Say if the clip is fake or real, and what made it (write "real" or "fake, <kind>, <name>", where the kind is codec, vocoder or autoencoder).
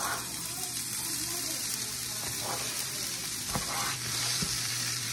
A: fake, vocoder, BigVGAN v2